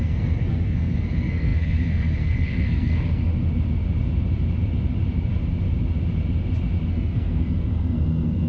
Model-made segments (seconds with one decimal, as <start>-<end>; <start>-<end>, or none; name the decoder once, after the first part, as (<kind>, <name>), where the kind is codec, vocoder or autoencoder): 0.0-3.3 (codec, SNAC); 6.9-8.5

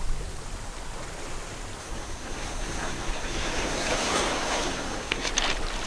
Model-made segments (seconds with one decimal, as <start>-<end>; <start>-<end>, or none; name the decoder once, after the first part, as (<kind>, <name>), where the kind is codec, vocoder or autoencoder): 1.8-5.3 (codec, SNAC)

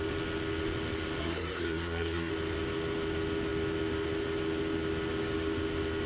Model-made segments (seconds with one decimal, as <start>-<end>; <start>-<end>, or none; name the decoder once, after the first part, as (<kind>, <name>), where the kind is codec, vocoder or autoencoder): 1.2-2.3 (codec, SNAC)

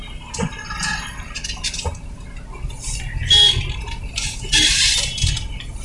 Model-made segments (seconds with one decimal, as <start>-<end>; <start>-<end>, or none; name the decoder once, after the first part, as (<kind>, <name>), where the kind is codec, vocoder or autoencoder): none

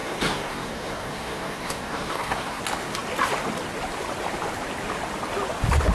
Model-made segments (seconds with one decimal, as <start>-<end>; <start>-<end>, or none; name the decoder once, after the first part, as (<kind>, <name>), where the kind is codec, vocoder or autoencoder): 0.0-2.6 (codec, SNAC)